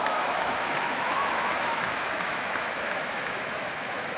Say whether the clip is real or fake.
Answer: fake